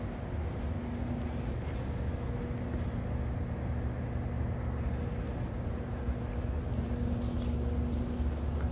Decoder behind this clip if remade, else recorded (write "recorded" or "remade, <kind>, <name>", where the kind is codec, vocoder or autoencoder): recorded